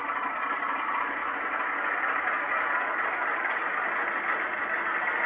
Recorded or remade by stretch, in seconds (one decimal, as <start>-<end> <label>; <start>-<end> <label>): 0.0-5.3 recorded